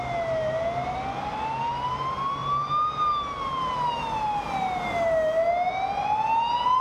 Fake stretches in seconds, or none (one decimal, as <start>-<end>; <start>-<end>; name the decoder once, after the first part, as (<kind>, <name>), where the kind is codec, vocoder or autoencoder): none

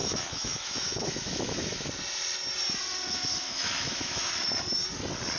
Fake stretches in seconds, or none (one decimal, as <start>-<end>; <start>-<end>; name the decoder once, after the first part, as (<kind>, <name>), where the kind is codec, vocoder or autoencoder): 0.0-1.9 (autoencoder, DAC-VAE); 3.4-4.3

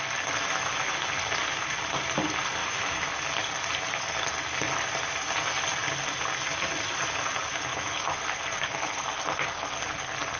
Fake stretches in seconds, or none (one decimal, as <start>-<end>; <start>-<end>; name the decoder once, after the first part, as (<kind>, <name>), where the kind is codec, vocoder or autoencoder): 0.4-1.1 (autoencoder, DAC-VAE); 2.6-3.2; 7.7-8.4

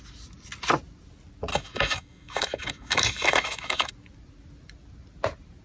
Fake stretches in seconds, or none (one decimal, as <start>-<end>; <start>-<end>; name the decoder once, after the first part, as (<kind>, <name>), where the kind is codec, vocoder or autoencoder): 1.5-3.9 (autoencoder, DAC-VAE)